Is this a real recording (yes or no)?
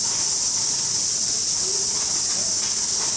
yes